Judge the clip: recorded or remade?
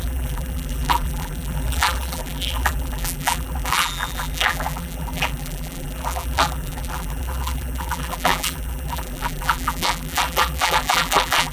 remade